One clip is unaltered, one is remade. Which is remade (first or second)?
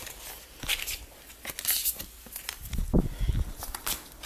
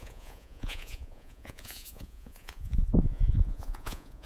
second